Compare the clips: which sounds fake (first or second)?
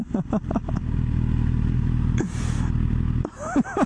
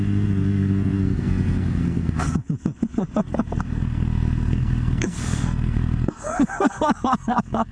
second